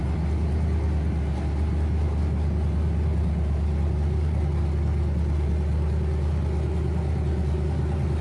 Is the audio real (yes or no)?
yes